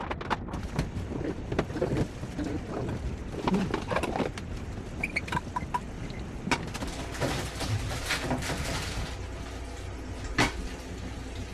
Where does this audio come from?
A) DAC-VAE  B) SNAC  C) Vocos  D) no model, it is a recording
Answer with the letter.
D